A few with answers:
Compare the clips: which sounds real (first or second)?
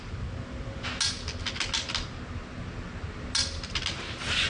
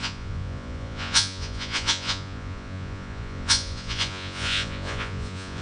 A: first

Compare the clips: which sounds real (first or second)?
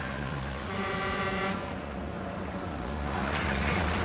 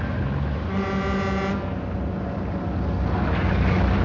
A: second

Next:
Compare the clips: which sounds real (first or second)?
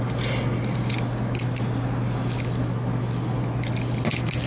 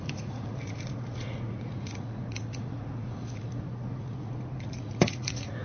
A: first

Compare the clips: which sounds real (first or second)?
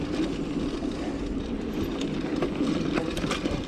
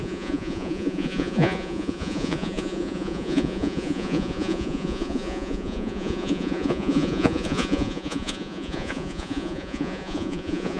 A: first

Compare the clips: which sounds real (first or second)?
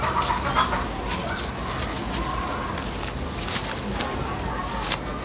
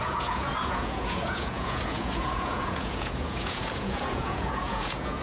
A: first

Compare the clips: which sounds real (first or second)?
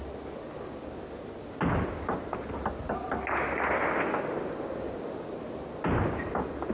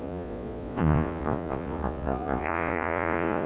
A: first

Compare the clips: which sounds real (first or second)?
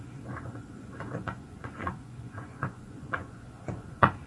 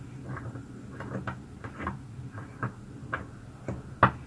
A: second